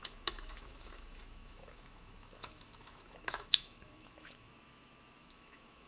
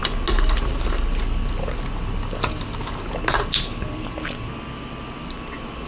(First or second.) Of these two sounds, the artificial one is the first